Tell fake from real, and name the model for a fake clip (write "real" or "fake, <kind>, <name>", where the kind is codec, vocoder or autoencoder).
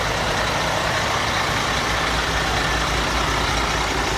real